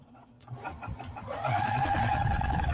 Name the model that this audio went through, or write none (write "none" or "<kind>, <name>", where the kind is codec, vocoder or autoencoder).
vocoder, Vocos